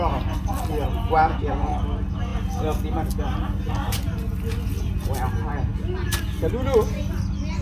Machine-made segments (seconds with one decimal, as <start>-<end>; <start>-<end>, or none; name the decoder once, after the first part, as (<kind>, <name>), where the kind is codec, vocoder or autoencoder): none